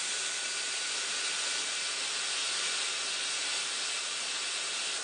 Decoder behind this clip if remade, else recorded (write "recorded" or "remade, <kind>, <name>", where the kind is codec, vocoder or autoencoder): recorded